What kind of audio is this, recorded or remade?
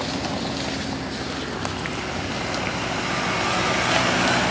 recorded